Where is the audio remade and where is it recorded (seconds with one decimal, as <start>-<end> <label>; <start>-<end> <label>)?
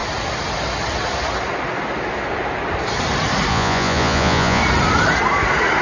0.0-3.5 recorded; 3.5-4.6 remade; 4.6-5.8 recorded